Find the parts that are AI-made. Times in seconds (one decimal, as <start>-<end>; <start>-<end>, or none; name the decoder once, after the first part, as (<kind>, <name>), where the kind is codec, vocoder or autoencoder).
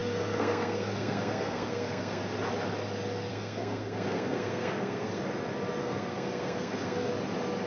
0.0-2.2 (codec, SNAC); 3.3-5.2; 5.8-7.1